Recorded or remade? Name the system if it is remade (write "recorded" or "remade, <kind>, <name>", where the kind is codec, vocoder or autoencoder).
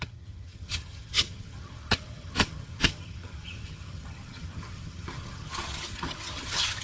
remade, vocoder, HiFi-GAN